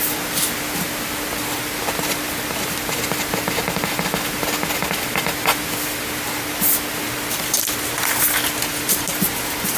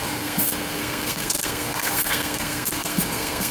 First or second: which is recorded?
first